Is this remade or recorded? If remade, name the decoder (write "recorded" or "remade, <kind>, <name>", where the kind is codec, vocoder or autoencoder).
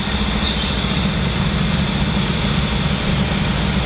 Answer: recorded